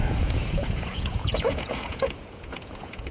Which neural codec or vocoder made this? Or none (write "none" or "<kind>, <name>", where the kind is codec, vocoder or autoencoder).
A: vocoder, Vocos